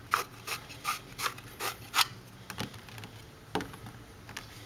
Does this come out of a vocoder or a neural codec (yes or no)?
no